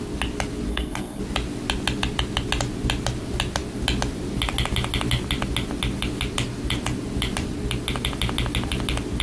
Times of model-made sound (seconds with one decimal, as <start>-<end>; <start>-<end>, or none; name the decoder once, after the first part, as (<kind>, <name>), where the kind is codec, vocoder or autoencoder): 0.7-1.2 (codec, SNAC)